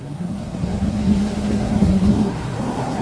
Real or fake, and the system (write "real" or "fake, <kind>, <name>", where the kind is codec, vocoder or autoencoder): fake, codec, SNAC